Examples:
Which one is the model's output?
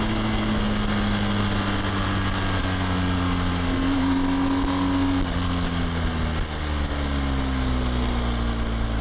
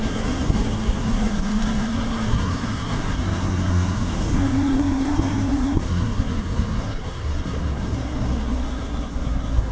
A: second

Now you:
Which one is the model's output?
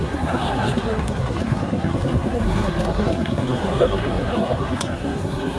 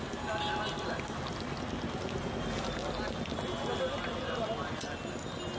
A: first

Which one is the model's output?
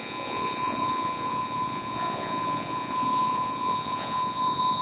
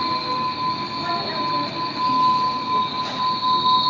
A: first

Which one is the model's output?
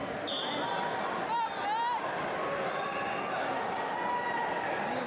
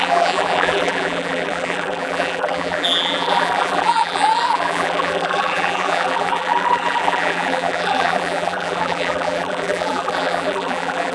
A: second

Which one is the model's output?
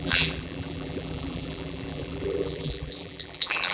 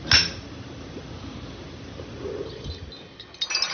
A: first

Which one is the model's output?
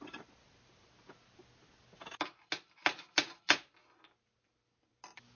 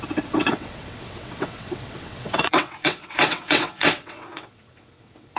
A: second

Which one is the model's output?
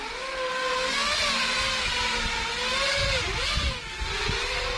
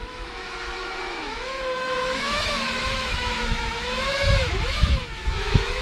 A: second